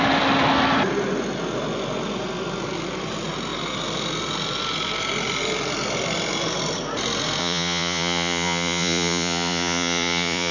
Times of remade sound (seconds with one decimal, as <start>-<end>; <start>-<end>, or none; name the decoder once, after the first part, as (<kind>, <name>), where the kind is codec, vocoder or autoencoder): 7.4-10.5 (vocoder, Vocos)